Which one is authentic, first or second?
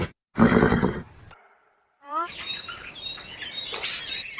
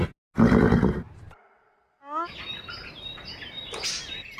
second